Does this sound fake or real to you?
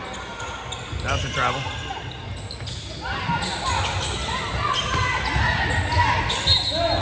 real